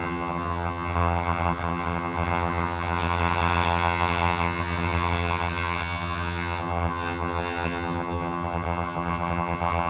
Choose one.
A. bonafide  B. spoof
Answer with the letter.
B